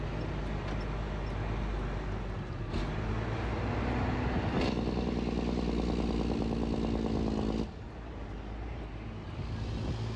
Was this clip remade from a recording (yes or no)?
no